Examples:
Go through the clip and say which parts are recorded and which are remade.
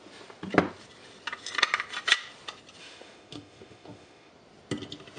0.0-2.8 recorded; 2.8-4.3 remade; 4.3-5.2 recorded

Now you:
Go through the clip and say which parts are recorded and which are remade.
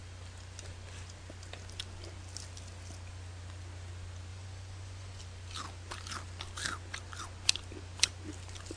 0.0-4.3 recorded; 4.3-5.2 remade; 5.2-8.8 recorded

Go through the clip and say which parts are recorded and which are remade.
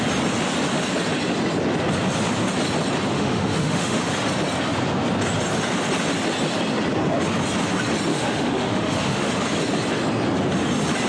0.0-3.1 recorded; 3.1-4.1 remade; 4.1-8.1 recorded; 8.1-9.3 remade; 9.3-11.1 recorded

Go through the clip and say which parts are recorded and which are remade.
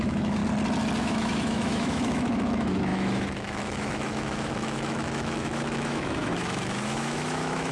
0.0-0.4 remade; 0.4-1.0 recorded; 1.0-7.7 remade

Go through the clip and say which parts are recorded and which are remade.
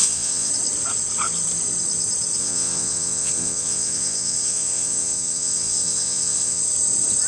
0.0-0.5 remade; 0.5-2.4 recorded; 2.4-6.6 remade; 6.6-7.3 recorded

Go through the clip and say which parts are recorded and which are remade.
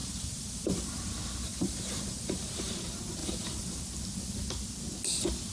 0.0-1.1 remade; 1.1-1.5 recorded; 1.5-2.7 remade; 2.7-3.2 recorded; 3.2-3.9 remade; 3.9-5.5 recorded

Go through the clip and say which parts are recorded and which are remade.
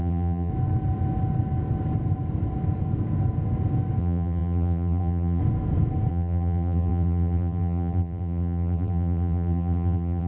0.0-0.5 remade; 0.5-4.0 recorded; 4.0-5.4 remade; 5.4-6.1 recorded; 6.1-10.3 remade